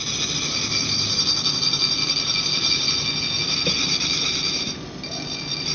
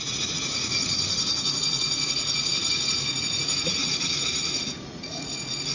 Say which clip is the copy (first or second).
second